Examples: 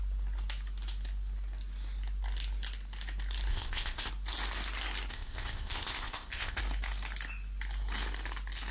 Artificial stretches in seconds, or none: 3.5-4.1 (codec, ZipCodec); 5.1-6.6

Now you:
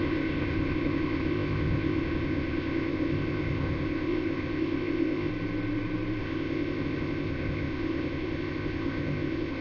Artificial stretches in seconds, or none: 0.0-5.3 (codec, ZipCodec); 6.2-9.6

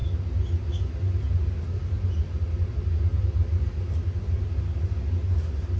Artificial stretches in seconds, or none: none

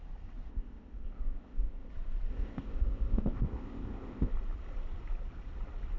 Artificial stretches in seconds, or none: 0.5-1.9 (codec, ZipCodec); 2.3-4.3

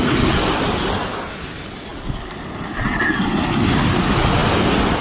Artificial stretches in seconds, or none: none